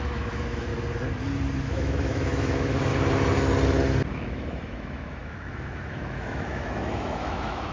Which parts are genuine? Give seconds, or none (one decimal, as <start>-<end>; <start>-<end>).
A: 0.7-1.6; 2.9-4.1